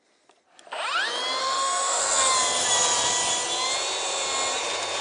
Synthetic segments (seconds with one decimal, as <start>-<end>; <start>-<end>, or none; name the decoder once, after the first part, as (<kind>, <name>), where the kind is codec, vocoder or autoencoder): 1.4-2.0 (autoencoder, DAC-VAE)